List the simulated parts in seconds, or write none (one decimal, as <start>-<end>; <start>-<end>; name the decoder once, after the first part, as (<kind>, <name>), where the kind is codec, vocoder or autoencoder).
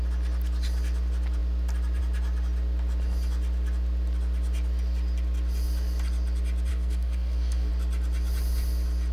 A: 6.7-7.7 (codec, SNAC)